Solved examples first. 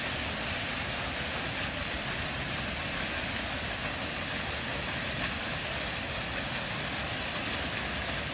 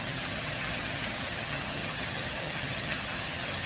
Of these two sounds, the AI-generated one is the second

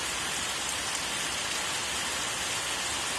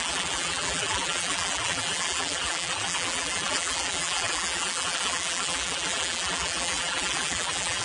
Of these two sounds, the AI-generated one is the second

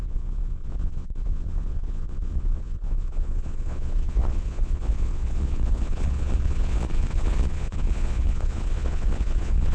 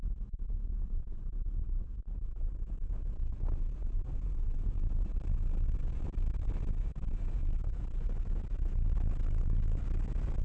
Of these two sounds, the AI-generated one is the first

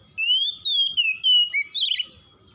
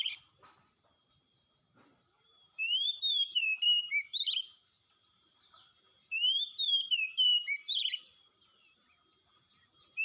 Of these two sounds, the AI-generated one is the second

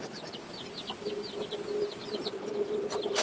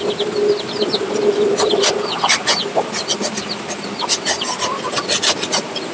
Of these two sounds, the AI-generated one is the first